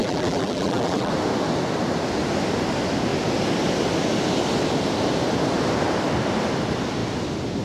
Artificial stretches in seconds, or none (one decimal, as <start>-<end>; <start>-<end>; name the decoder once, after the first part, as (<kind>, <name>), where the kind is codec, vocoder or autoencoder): 0.0-1.1 (vocoder, BigVGAN v2)